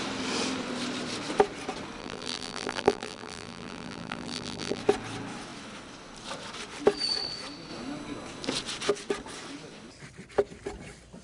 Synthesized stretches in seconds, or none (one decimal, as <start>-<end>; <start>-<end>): 2.0-4.8